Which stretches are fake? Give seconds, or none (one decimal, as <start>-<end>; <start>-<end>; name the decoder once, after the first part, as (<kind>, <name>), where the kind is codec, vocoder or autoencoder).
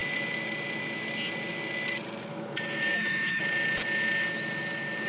2.3-3.4 (autoencoder, DAC-VAE)